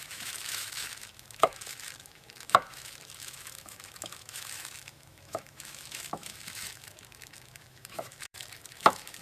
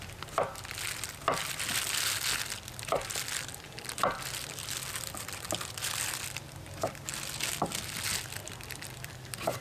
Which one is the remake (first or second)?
first